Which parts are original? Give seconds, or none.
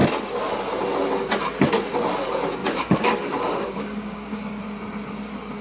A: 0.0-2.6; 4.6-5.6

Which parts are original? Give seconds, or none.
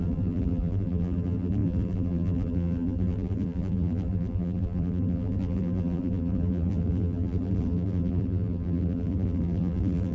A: none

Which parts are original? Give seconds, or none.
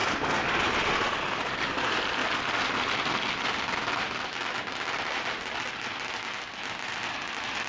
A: 0.0-7.7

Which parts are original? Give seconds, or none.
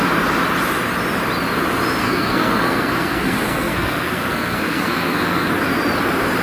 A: 0.0-2.0; 5.5-6.4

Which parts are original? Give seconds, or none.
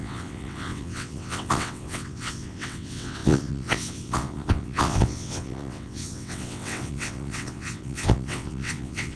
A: none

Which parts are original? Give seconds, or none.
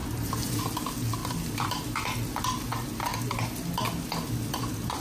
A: 0.6-1.2; 2.4-5.0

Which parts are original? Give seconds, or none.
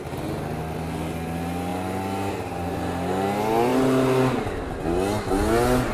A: 0.0-5.9